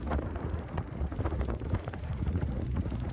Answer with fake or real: fake